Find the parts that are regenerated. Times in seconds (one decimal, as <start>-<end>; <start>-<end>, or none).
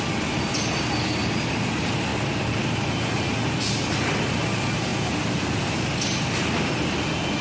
none